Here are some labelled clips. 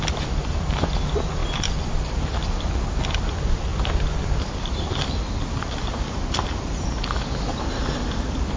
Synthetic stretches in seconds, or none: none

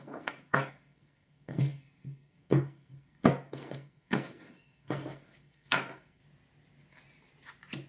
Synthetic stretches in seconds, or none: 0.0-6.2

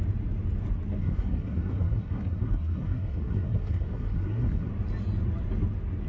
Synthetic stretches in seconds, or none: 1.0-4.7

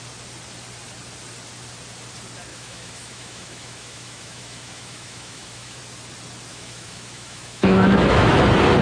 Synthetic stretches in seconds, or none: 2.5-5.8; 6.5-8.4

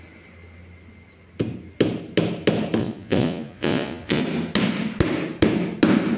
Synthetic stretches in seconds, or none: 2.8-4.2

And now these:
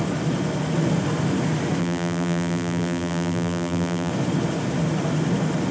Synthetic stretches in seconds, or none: 1.8-4.1

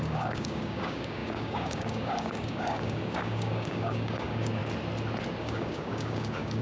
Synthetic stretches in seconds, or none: 0.0-4.6; 5.4-6.6

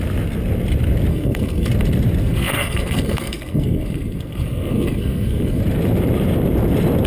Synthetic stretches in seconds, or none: 1.1-1.7; 2.2-5.6